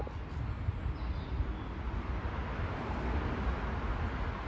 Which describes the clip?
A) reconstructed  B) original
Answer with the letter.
B